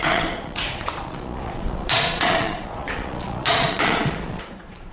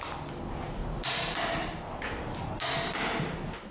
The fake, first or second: first